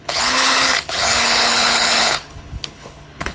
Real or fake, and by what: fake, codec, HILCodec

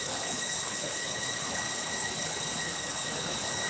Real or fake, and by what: fake, codec, HILCodec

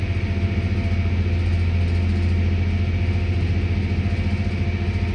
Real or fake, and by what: real